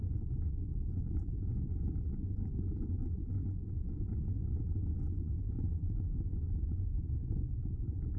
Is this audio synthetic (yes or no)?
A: yes